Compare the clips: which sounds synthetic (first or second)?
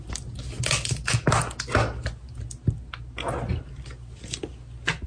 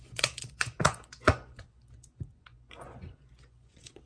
second